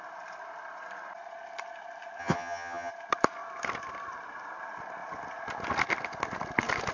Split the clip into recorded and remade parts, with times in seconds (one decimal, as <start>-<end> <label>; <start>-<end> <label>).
0.0-2.2 recorded; 2.2-2.9 remade; 2.9-6.9 recorded